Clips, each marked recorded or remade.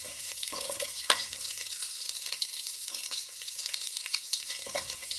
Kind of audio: remade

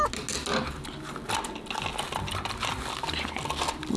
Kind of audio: recorded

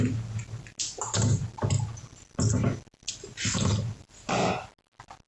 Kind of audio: recorded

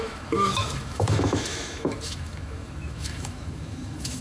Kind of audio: remade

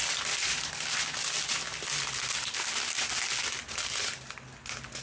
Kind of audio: recorded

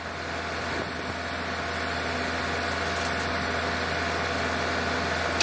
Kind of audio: recorded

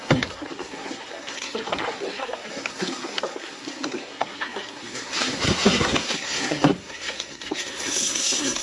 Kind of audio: remade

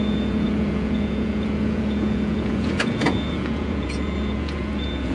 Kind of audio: remade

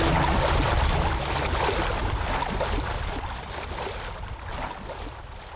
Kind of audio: recorded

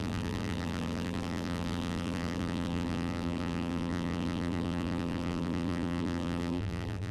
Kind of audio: remade